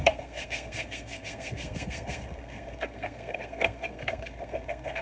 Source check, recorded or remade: remade